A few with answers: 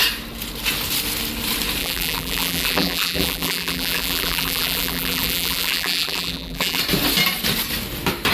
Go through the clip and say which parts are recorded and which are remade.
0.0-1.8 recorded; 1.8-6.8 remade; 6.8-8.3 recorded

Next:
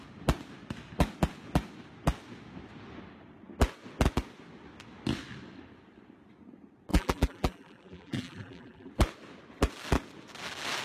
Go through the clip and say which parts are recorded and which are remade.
0.0-6.9 recorded; 6.9-8.9 remade; 8.9-10.8 recorded

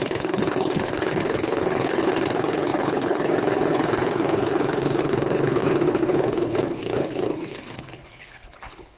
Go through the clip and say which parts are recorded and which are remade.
0.0-9.0 remade

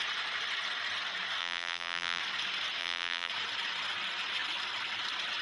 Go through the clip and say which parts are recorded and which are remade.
0.0-1.4 recorded; 1.4-2.2 remade; 2.2-2.8 recorded; 2.8-3.3 remade; 3.3-5.4 recorded

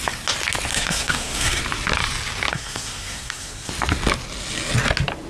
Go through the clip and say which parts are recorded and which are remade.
0.0-0.7 recorded; 0.7-1.6 remade; 1.6-2.5 recorded; 2.5-3.7 remade; 3.7-5.3 recorded

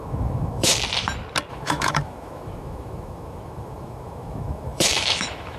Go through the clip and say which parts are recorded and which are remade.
0.0-0.7 remade; 0.7-1.5 recorded; 1.5-5.6 remade